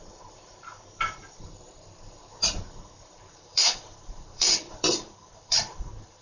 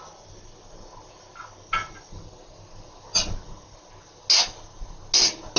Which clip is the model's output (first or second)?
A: first